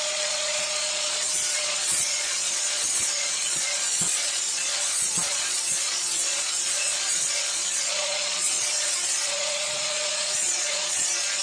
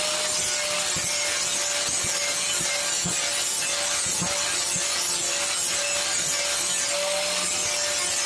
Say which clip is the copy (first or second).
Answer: first